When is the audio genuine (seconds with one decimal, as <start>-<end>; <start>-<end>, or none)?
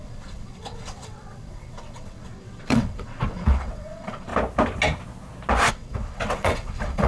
4.3-5.7